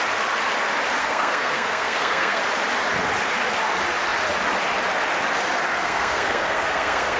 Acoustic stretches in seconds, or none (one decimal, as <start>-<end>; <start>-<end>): 0.0-1.0; 2.4-5.7